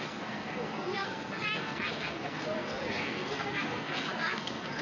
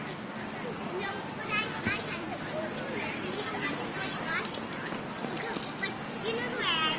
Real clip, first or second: second